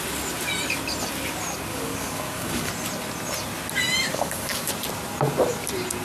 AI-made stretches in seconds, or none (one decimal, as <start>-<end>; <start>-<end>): 1.7-2.7; 4.1-4.7